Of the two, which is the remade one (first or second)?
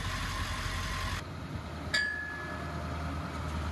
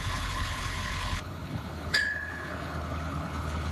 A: second